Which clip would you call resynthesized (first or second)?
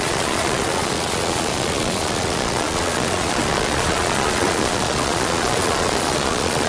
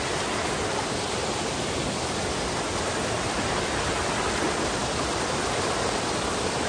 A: first